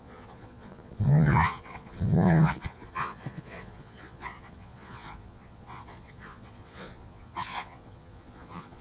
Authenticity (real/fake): fake